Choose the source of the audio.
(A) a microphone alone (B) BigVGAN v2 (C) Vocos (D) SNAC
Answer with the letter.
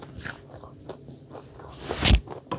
A